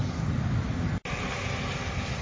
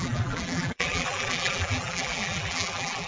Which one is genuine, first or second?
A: first